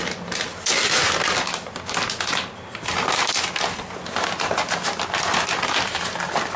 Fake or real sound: real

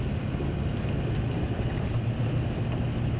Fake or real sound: real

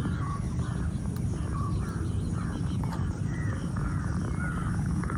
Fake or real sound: real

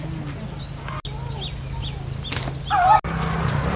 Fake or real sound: real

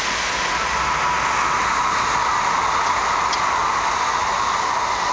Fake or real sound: real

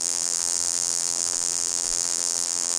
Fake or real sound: fake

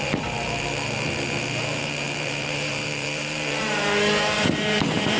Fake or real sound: fake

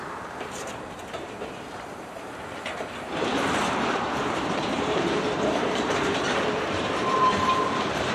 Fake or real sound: fake